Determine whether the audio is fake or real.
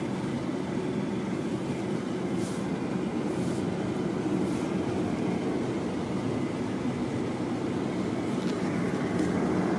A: real